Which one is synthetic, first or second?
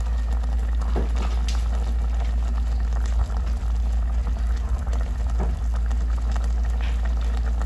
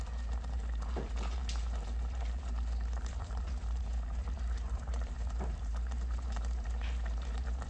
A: second